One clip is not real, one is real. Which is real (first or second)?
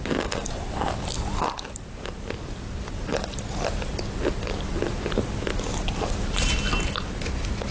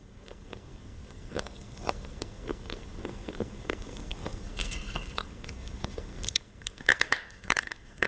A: first